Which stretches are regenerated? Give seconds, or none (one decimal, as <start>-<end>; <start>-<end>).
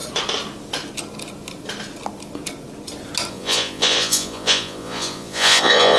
3.3-6.0